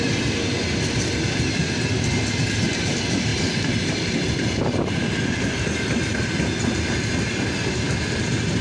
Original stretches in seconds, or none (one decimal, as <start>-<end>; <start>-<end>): 0.0-3.3; 8.2-8.6